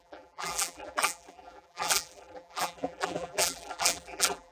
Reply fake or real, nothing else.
fake